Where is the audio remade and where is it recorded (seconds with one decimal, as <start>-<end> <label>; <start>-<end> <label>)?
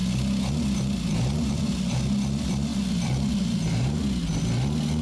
0.0-2.7 recorded; 2.7-3.6 remade; 3.6-5.0 recorded